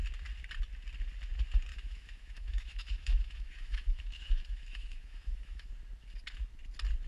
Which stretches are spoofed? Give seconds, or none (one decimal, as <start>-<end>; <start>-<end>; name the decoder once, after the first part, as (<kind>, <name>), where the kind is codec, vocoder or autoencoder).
1.7-5.7 (autoencoder, DAC-VAE)